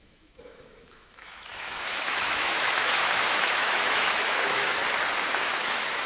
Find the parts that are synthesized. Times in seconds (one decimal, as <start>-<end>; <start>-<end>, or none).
0.0-4.8; 5.3-6.1